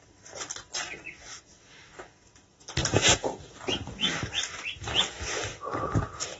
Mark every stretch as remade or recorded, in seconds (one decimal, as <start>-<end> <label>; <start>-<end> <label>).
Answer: 0.0-6.4 recorded